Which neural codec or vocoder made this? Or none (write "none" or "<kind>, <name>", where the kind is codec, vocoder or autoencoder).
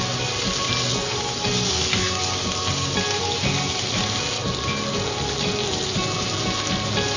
none